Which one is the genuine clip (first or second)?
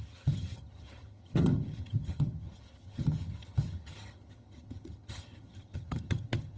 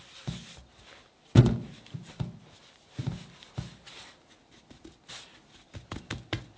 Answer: second